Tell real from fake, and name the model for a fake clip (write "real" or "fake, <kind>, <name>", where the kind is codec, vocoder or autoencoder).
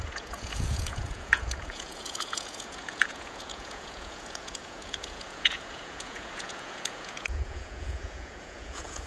fake, vocoder, Vocos